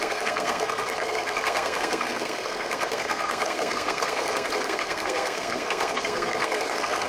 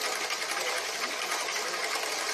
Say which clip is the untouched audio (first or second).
second